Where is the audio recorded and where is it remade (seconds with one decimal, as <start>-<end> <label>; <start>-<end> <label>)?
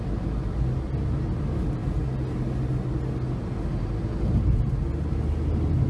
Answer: 0.0-5.9 recorded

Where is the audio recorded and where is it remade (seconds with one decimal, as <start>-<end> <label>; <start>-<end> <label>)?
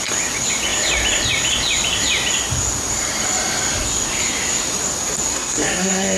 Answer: 0.0-5.3 recorded; 5.3-6.2 remade